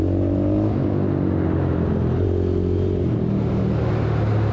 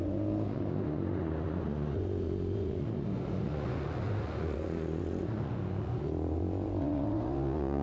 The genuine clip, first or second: first